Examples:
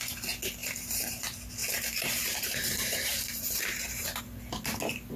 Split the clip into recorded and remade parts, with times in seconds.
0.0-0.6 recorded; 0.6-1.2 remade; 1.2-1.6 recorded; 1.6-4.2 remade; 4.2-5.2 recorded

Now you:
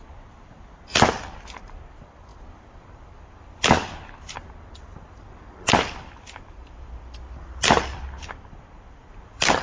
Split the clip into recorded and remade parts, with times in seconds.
0.0-9.6 remade

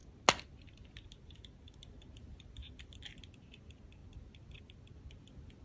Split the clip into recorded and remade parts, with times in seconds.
0.0-5.6 recorded

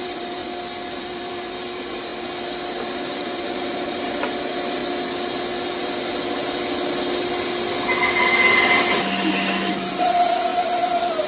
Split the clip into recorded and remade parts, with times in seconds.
0.0-0.4 remade; 0.4-1.0 recorded; 1.0-2.1 remade; 2.1-2.9 recorded; 2.9-4.8 remade; 4.8-9.7 recorded; 9.7-11.3 remade

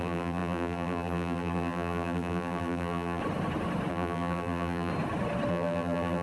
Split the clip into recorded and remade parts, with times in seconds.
0.0-3.2 remade; 3.2-3.9 recorded; 3.9-4.9 remade; 4.9-5.5 recorded; 5.5-6.2 remade

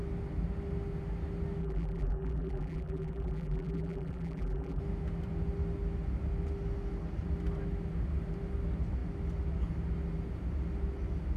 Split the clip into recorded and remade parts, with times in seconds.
0.0-1.6 recorded; 1.6-4.8 remade; 4.8-11.4 recorded

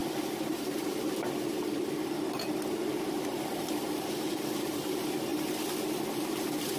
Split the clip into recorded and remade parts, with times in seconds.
0.0-0.5 recorded; 0.5-5.3 remade; 5.3-6.1 recorded; 6.1-6.8 remade

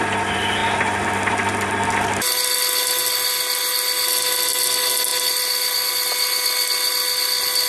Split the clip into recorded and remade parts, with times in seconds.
0.0-7.7 recorded